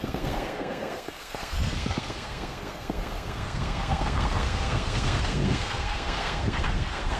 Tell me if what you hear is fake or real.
fake